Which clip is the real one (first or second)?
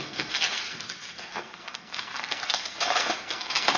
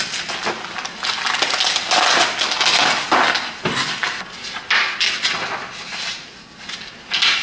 second